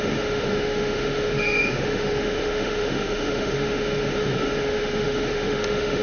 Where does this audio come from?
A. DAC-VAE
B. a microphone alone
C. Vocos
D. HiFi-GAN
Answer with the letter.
A